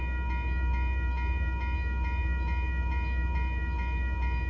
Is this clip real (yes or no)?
yes